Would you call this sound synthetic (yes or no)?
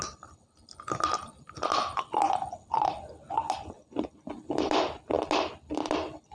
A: no